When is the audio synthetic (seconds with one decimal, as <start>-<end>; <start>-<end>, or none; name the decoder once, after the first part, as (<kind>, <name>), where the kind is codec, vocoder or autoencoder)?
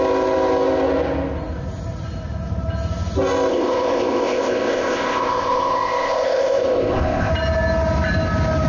3.5-7.3 (codec, ZipCodec)